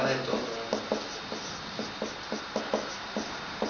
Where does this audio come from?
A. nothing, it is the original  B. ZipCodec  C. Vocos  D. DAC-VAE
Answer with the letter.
A